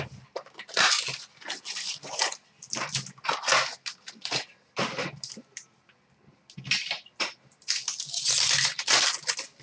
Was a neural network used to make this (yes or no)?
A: no